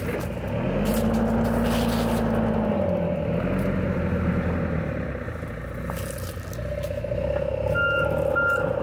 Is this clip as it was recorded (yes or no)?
yes